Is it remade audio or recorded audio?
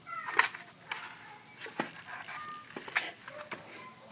recorded